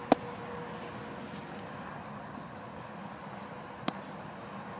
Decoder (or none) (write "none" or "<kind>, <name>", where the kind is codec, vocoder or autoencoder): none